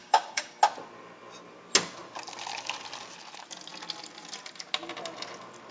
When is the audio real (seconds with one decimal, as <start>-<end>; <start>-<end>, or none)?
0.6-5.7